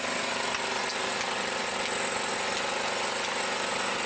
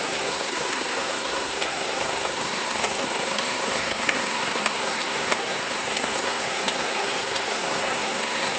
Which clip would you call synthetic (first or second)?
second